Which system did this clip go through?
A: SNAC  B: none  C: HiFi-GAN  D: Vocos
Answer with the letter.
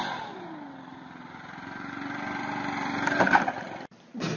B